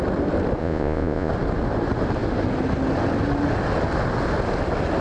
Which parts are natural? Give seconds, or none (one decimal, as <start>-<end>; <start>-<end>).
0.0-0.6; 1.3-5.0